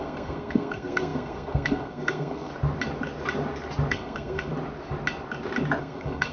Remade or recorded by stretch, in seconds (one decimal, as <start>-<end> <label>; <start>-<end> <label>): 0.0-2.5 remade; 2.5-3.9 recorded; 3.9-4.5 remade; 4.5-5.8 recorded; 5.8-6.3 remade